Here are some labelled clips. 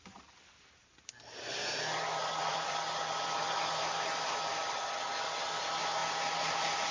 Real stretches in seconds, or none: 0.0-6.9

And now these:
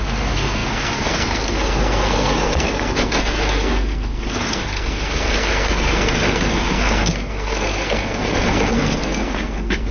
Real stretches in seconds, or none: none

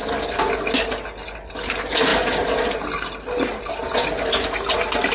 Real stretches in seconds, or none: 0.0-5.1

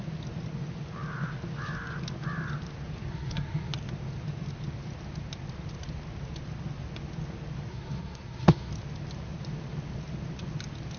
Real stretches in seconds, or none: 0.0-3.1; 3.7-7.7; 8.7-11.0